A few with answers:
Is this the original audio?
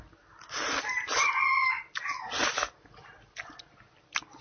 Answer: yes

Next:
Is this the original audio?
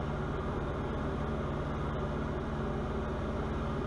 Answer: yes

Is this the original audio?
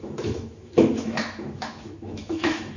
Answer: no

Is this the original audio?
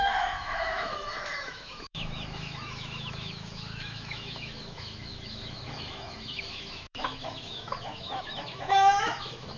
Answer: no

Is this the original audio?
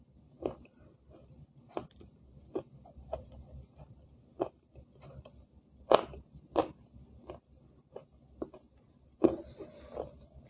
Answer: yes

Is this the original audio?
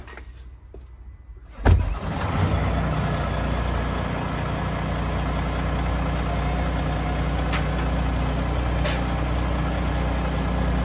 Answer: yes